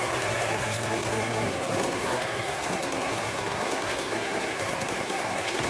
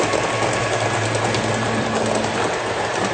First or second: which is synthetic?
first